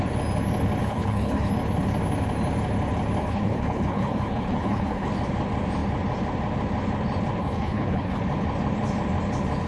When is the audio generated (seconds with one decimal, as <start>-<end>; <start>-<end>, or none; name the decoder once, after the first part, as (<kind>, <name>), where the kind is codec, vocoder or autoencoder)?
0.8-1.5 (codec, HILCodec); 3.2-5.1; 7.4-8.2